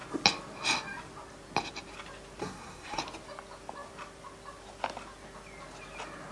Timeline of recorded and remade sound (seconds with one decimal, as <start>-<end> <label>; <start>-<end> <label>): 0.0-2.4 recorded; 2.4-3.0 remade; 3.0-6.3 recorded